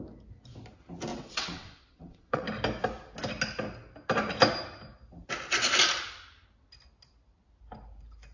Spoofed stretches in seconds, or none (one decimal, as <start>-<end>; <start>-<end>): 1.1-2.4